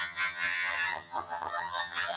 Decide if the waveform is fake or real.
fake